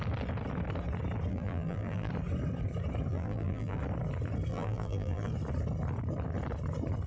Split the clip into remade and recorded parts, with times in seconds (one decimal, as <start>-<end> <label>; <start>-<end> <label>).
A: 0.0-1.3 recorded; 1.3-2.1 remade; 2.1-3.1 recorded; 3.1-3.8 remade; 3.8-4.5 recorded; 4.5-5.3 remade; 5.3-7.1 recorded